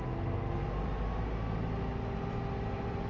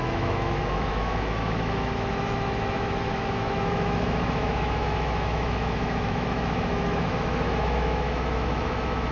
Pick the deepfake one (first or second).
second